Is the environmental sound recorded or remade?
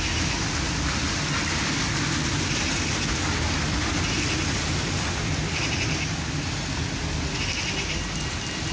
recorded